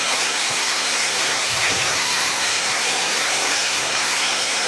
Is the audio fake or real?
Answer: fake